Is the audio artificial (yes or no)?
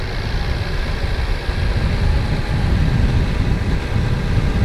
yes